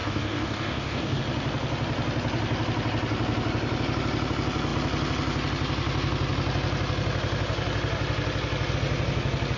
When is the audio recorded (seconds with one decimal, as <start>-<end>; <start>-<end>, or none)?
1.2-9.6